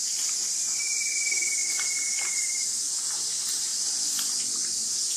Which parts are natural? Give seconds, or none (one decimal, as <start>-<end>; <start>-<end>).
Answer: 0.0-3.7; 4.6-5.2